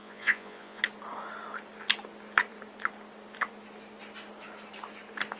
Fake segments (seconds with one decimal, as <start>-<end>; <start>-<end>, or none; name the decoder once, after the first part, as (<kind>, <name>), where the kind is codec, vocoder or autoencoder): 0.0-0.8 (vocoder, Vocos)